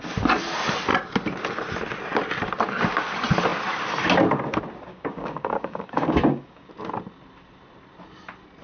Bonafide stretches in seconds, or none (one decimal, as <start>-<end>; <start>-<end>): 0.0-4.9; 6.7-8.6